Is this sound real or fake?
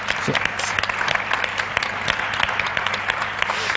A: real